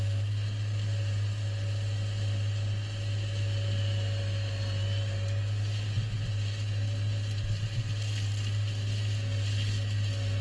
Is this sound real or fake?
real